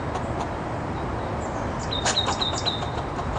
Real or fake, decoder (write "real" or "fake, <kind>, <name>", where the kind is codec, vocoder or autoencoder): real